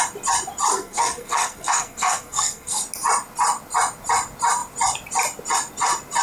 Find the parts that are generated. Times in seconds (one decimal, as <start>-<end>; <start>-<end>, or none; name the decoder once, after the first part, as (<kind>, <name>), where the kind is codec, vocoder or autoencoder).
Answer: 0.7-2.8 (codec, SNAC)